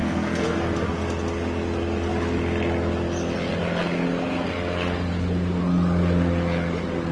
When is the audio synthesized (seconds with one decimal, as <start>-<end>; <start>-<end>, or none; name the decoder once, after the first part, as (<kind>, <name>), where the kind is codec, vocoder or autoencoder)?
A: 0.0-0.6 (codec, SNAC)